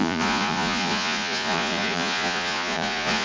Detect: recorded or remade remade